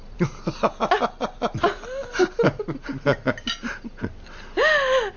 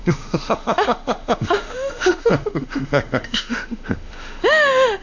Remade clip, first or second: second